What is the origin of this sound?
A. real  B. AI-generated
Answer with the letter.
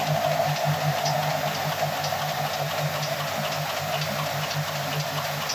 A